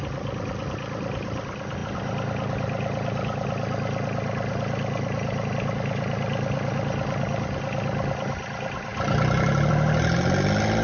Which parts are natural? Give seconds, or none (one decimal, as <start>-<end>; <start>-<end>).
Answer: 0.0-10.8